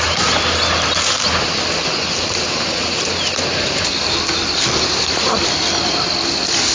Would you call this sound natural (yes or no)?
yes